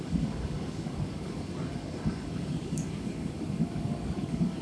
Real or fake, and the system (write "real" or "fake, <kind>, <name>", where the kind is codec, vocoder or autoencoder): fake, codec, DAC